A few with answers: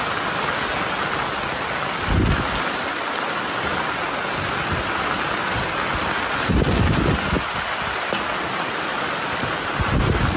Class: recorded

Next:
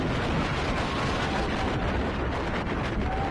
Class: recorded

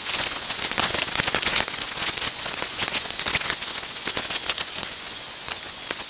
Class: remade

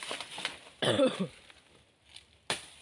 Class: recorded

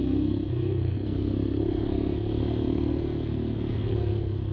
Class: remade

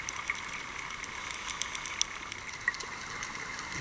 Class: recorded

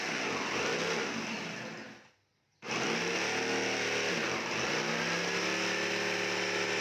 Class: recorded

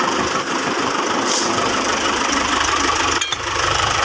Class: remade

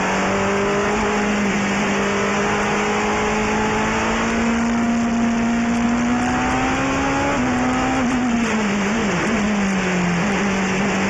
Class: recorded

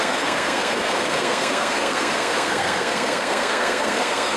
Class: remade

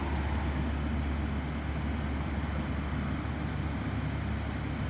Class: recorded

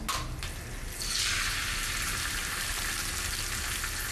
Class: recorded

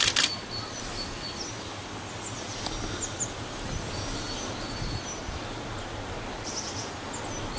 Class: recorded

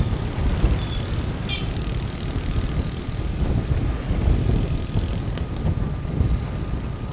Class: recorded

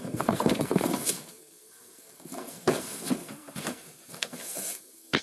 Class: remade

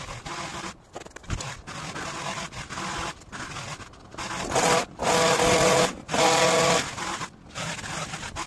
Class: recorded